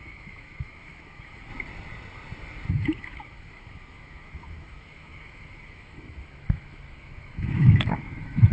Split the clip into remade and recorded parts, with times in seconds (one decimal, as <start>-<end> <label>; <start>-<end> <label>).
0.0-1.5 remade; 1.5-2.7 recorded; 2.7-8.5 remade